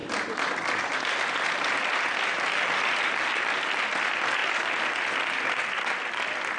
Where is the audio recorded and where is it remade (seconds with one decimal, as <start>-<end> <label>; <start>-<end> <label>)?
0.0-6.6 recorded

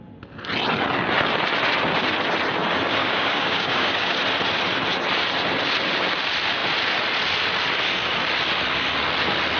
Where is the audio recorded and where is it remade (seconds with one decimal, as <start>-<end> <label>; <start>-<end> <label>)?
0.0-3.0 recorded; 3.0-4.2 remade; 4.2-9.6 recorded

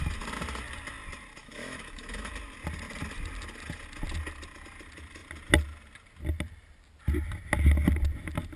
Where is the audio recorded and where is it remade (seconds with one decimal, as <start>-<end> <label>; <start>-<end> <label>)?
0.0-1.4 recorded; 1.4-2.3 remade; 2.3-8.6 recorded

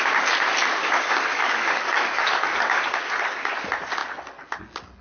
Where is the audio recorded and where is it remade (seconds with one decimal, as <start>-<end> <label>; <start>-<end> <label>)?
0.0-0.8 recorded; 0.8-2.8 remade; 2.8-5.0 recorded

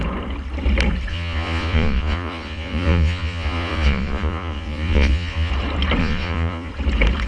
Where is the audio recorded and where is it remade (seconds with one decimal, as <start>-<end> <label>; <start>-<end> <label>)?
0.0-1.1 recorded; 1.1-5.5 remade; 5.5-6.0 recorded; 6.0-6.7 remade; 6.7-7.3 recorded

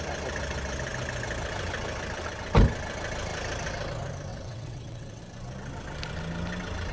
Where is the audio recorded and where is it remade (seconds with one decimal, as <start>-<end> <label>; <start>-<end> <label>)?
0.0-4.3 recorded; 4.3-5.2 remade; 5.2-6.9 recorded

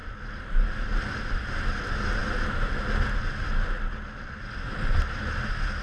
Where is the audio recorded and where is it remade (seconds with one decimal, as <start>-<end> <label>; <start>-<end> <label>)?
0.0-1.5 remade; 1.5-5.8 recorded